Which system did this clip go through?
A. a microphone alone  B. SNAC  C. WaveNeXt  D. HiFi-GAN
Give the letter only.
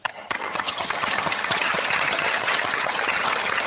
D